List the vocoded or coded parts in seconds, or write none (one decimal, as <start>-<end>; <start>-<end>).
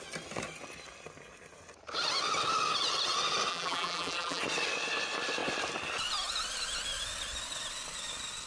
3.5-4.4